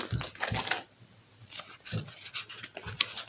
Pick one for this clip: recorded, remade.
recorded